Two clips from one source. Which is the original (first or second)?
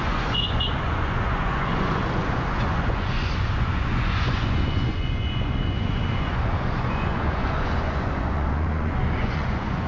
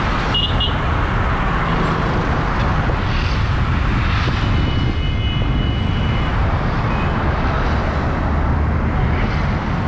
second